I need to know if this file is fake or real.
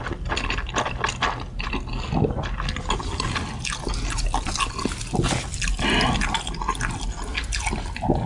real